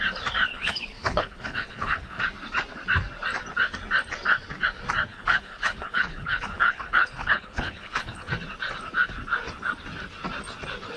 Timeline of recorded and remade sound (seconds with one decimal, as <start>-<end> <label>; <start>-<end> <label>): 0.0-0.5 recorded; 0.5-2.2 remade; 2.2-5.1 recorded; 5.1-8.3 remade; 8.3-11.0 recorded